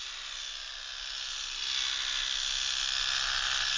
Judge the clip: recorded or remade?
recorded